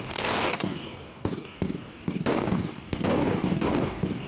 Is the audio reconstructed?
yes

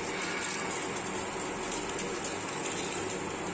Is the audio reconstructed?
no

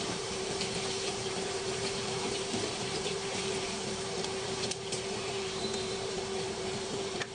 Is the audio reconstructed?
yes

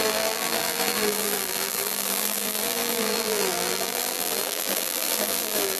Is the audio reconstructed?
yes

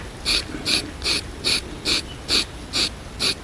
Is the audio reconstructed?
no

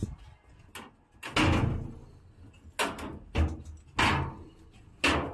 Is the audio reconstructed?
no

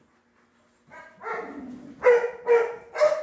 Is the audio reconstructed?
no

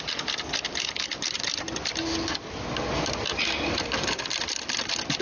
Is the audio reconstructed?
no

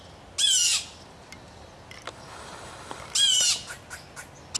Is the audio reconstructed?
no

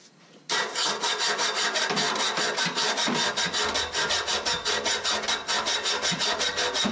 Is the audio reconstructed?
no